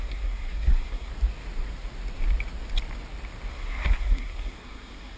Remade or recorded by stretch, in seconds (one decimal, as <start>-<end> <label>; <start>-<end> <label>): 0.0-1.1 remade; 1.1-3.5 recorded; 3.5-5.2 remade